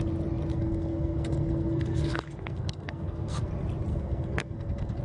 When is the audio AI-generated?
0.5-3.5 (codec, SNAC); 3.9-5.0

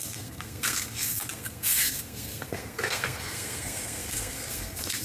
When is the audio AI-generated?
0.0-5.0 (codec, SNAC)

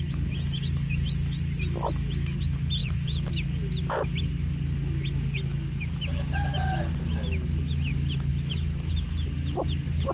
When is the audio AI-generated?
2.8-3.3 (vocoder, Vocos)

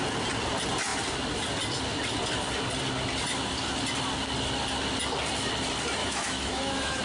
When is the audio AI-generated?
6.0-7.0 (autoencoder, DAC-VAE)